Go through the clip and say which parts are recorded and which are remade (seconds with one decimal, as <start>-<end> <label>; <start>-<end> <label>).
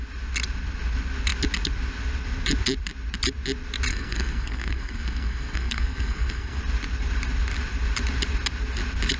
0.0-3.9 recorded; 3.9-6.6 remade; 6.6-9.2 recorded